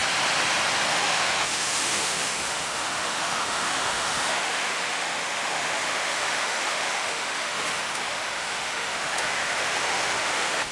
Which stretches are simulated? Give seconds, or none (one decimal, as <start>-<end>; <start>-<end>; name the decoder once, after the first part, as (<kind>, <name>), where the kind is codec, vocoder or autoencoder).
0.9-10.7 (autoencoder, DAC-VAE)